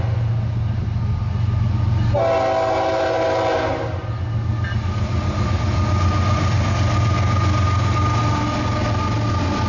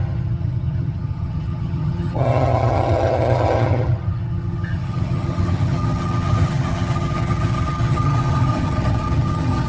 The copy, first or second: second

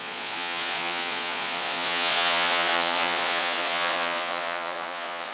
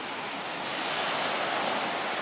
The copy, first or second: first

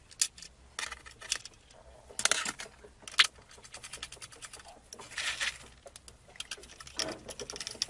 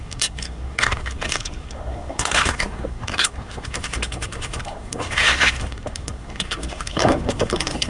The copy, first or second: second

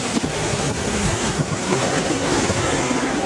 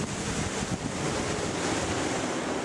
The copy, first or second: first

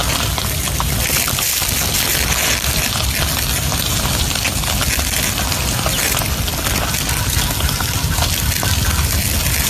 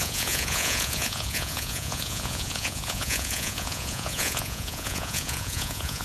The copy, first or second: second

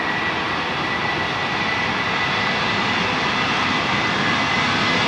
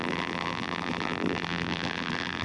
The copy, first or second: second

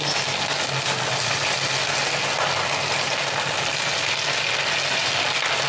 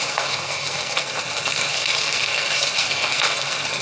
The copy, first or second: second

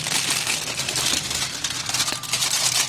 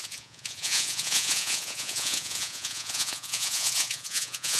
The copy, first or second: second